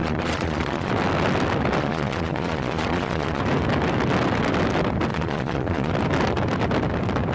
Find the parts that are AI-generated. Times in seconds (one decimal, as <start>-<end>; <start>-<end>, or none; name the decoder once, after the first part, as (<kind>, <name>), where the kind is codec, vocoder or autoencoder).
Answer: 0.0-0.9 (vocoder, Vocos); 1.8-3.4; 5.1-5.9